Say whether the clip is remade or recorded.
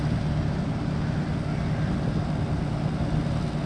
recorded